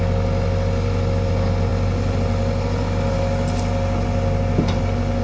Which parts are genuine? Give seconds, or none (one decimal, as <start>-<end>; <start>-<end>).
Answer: 0.0-5.2